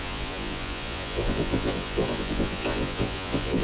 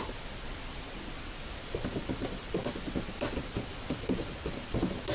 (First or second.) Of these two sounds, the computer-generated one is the first